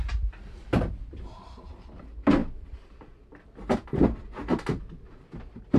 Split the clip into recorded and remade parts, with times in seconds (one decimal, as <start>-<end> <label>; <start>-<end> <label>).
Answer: 0.0-2.4 remade; 2.4-5.1 recorded; 5.1-5.8 remade